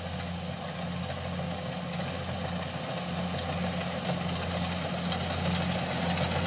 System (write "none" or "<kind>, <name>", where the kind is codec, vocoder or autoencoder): none